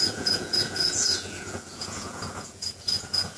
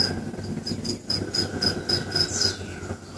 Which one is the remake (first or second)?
first